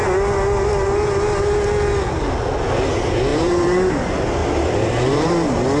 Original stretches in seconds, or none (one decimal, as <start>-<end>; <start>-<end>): 0.0-3.3; 3.9-4.4; 5.3-5.8